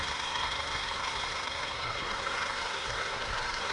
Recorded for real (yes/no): no